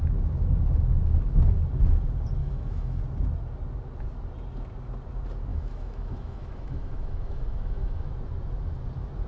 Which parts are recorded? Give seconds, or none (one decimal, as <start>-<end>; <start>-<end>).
0.0-2.4; 3.0-5.5; 8.1-9.3